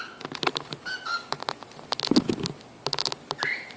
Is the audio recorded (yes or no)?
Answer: yes